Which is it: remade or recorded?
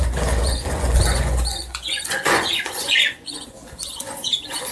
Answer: remade